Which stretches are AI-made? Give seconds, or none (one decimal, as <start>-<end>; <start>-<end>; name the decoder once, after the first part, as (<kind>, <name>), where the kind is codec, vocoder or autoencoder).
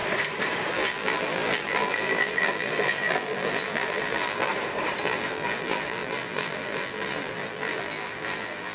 0.7-4.5 (vocoder, BigVGAN v2); 5.0-8.7